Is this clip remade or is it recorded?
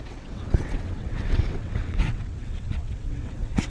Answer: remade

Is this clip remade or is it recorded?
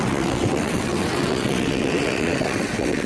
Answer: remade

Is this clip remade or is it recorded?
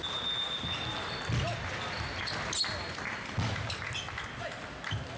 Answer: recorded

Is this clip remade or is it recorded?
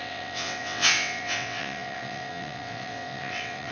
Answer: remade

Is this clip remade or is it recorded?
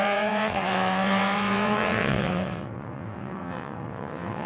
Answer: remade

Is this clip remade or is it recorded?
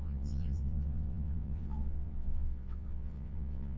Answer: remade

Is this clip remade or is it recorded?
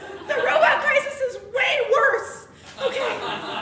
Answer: recorded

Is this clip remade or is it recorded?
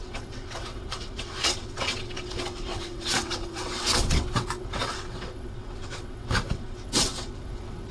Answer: remade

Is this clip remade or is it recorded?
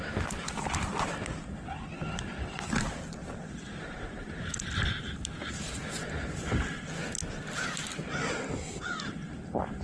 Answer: recorded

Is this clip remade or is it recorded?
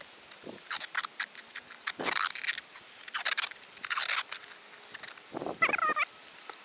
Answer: recorded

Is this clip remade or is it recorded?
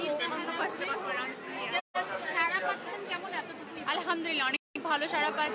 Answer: recorded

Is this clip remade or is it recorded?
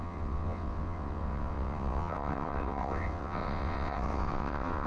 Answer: remade